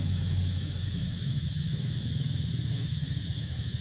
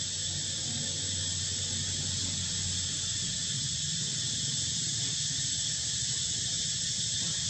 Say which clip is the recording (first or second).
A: second